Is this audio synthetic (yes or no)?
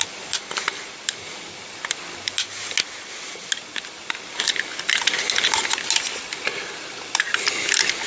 no